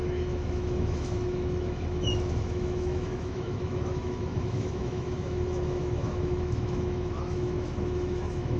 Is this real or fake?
fake